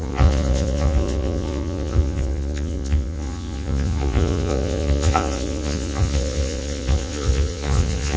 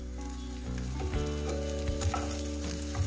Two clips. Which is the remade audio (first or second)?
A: first